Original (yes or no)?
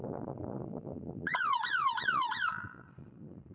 no